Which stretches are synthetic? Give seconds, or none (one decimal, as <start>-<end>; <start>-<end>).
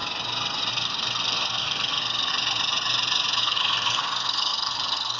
0.7-2.3; 3.4-5.2